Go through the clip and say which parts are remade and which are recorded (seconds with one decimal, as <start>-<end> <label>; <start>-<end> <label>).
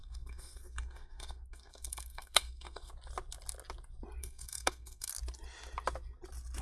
0.0-2.9 remade; 2.9-4.2 recorded; 4.2-5.1 remade; 5.1-6.6 recorded